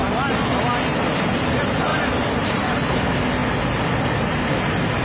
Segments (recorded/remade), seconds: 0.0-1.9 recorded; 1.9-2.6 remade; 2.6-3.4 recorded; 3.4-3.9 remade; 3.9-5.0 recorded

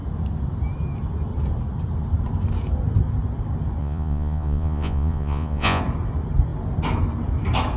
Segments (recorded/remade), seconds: 0.0-3.8 recorded; 3.8-5.8 remade; 5.8-7.8 recorded